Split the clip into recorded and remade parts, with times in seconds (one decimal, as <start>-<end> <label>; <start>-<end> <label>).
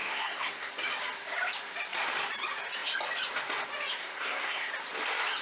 0.0-0.7 remade; 0.7-4.0 recorded; 4.0-4.7 remade; 4.7-5.4 recorded